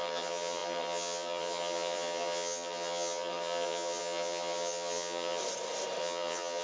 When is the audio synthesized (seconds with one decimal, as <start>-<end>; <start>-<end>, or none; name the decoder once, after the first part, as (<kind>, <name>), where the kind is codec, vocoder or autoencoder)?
0.0-5.4 (vocoder, HiFi-GAN); 6.0-6.6